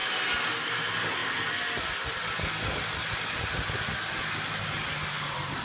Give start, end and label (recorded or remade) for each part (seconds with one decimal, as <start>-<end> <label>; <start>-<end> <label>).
0.0-5.6 recorded